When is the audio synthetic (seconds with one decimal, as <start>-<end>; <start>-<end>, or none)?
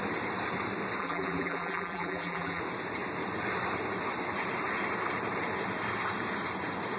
1.0-2.6